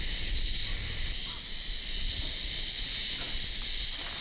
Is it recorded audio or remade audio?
remade